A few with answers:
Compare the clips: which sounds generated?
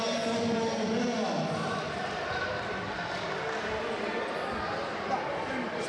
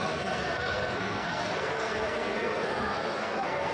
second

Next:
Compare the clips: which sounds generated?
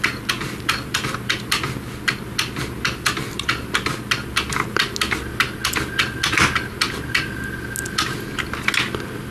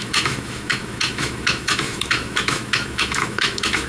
second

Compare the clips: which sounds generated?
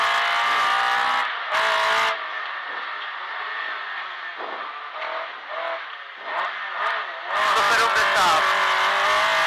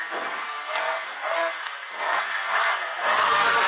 second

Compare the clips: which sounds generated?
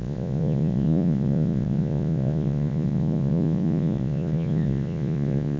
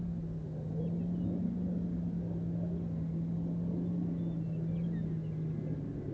first